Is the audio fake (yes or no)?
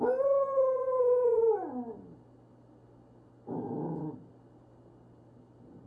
no